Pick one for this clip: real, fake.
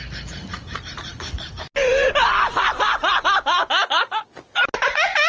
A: real